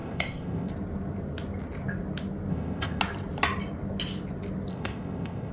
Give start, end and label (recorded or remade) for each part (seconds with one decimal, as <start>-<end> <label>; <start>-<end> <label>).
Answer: 0.0-0.7 remade; 0.7-2.5 recorded; 2.5-3.0 remade; 3.0-4.7 recorded; 4.7-5.5 remade